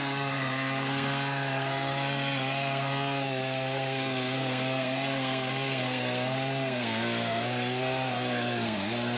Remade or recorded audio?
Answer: remade